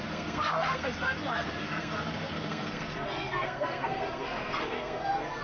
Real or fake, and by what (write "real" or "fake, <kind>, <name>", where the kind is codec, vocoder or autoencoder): fake, codec, SNAC